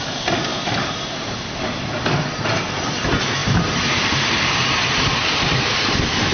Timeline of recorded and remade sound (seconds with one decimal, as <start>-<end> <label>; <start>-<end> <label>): 0.0-0.5 recorded; 0.5-1.9 remade; 1.9-3.4 recorded; 3.4-4.4 remade; 4.4-6.3 recorded